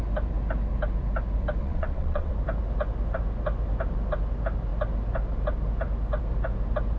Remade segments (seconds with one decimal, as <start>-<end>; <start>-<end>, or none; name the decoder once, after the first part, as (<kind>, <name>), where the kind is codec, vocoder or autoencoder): 1.6-2.3 (vocoder, WaveNeXt)